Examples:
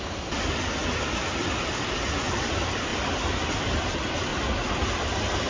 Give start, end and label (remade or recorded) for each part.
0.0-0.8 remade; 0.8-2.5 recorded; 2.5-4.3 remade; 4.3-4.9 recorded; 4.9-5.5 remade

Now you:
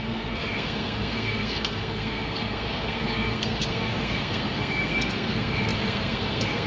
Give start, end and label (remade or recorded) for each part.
0.0-6.7 remade

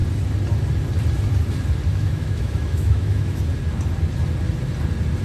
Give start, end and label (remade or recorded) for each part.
0.0-1.9 recorded; 1.9-3.4 remade; 3.4-5.2 recorded

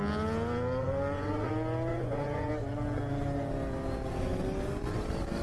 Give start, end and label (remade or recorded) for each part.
0.0-0.8 recorded; 0.8-1.5 remade; 1.5-1.9 recorded; 1.9-2.5 remade; 2.5-5.4 recorded

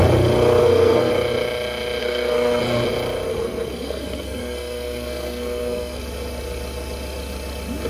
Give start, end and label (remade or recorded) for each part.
0.0-0.6 recorded; 0.6-1.1 remade; 1.1-2.0 recorded; 2.0-2.6 remade; 2.6-3.3 recorded; 3.3-6.0 remade; 6.0-7.9 recorded

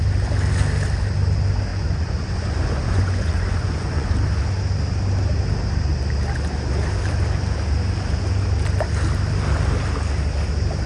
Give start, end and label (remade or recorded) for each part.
0.0-1.7 recorded; 1.7-4.1 remade; 4.1-10.9 recorded

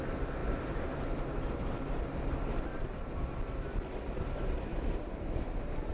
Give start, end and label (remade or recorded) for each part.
0.0-0.4 recorded; 0.4-2.3 remade; 2.3-2.7 recorded; 2.7-3.4 remade; 3.4-4.7 recorded; 4.7-5.9 remade

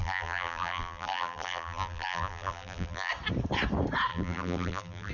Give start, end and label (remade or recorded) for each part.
0.0-3.1 remade; 3.1-4.1 recorded; 4.1-5.1 remade